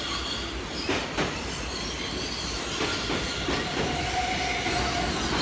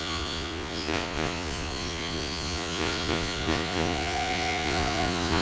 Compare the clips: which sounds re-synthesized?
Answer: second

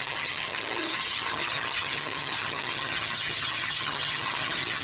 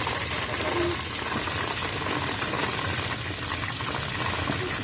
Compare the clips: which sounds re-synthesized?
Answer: first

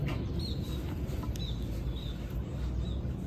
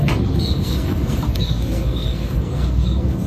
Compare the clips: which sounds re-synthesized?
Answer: second